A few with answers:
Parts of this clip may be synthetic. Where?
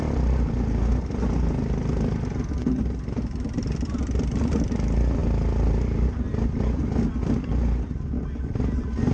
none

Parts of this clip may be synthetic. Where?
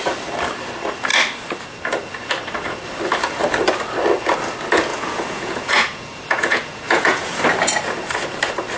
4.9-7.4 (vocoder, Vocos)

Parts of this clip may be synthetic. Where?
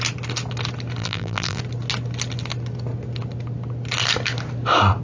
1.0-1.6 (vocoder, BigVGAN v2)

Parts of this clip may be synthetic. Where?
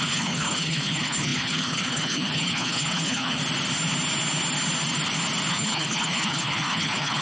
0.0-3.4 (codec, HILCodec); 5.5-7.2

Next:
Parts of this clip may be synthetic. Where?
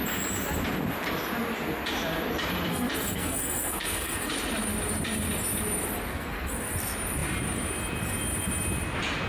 2.7-4.3 (codec, SNAC); 6.1-6.7